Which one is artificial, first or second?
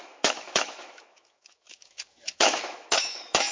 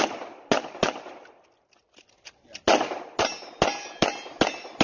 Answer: first